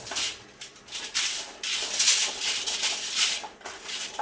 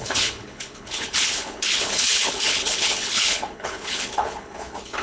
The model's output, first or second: second